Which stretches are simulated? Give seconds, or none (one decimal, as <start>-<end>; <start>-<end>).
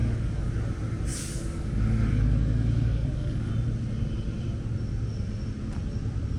0.0-0.5; 1.1-3.5